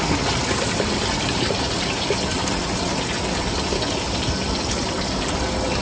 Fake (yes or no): no